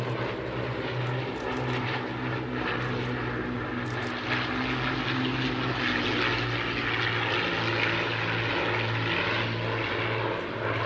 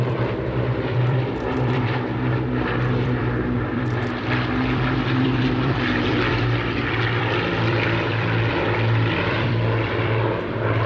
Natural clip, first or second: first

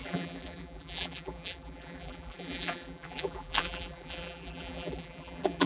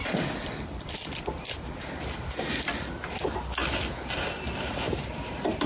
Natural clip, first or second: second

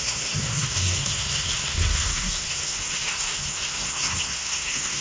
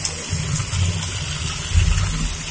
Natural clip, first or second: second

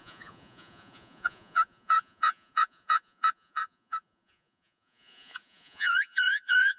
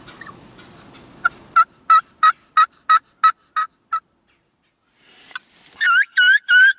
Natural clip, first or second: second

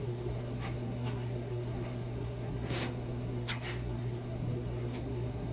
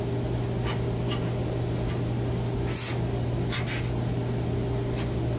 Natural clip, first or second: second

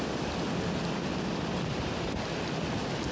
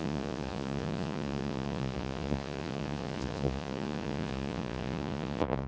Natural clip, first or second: first